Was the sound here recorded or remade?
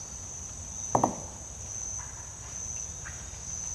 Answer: recorded